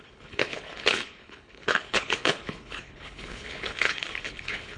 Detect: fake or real fake